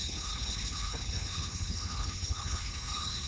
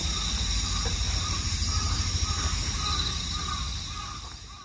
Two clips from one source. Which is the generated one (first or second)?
first